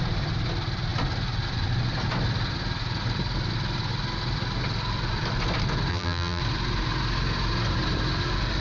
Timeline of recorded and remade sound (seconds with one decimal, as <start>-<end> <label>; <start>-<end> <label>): 0.0-5.9 recorded; 5.9-6.4 remade; 6.4-8.6 recorded